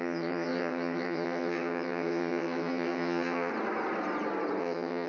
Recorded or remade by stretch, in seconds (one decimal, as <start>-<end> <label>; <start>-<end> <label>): 0.0-3.5 remade; 3.5-4.6 recorded; 4.6-5.1 remade